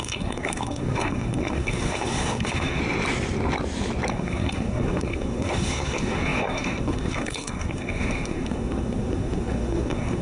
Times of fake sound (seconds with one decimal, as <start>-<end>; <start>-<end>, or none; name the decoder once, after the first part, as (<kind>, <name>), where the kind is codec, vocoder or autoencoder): 0.0-2.8 (codec, SNAC); 4.1-10.2